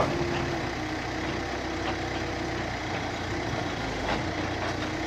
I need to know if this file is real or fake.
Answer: real